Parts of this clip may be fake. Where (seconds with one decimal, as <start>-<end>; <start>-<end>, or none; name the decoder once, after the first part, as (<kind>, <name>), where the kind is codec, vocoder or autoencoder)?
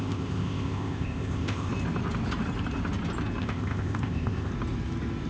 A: 0.0-1.7 (codec, ZipCodec); 3.4-4.5